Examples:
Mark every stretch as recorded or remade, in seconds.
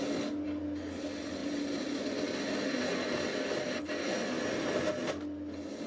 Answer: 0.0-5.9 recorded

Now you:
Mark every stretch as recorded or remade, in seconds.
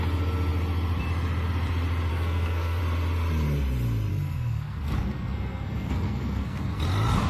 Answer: 0.0-2.1 recorded; 2.1-2.8 remade; 2.8-4.1 recorded; 4.1-6.8 remade; 6.8-7.3 recorded